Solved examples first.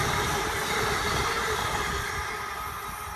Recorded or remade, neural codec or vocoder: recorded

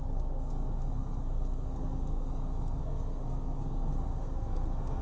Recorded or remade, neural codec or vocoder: remade, codec, SNAC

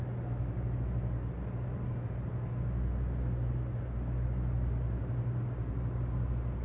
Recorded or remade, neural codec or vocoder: recorded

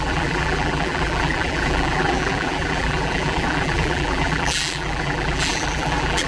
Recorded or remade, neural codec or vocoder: remade, vocoder, BigVGAN v2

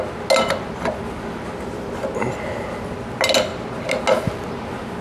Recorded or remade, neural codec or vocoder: recorded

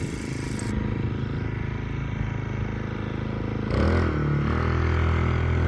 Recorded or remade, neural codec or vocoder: recorded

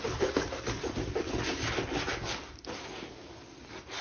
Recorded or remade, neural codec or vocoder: recorded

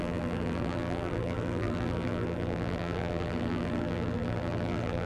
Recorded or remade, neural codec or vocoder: remade, vocoder, BigVGAN v2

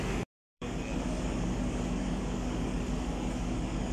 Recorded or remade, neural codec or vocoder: remade, codec, DAC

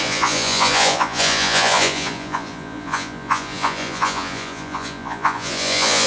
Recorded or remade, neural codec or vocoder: remade, vocoder, Vocos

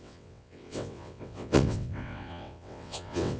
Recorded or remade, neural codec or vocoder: remade, vocoder, WaveNeXt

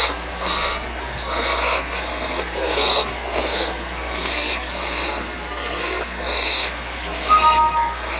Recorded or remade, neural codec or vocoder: remade, codec, SNAC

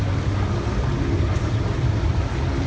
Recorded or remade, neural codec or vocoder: recorded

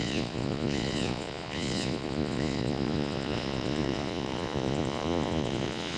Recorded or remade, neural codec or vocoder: remade, vocoder, Vocos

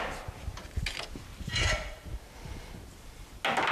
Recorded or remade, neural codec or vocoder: recorded